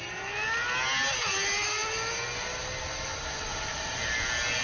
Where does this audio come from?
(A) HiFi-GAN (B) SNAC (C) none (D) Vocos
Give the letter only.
C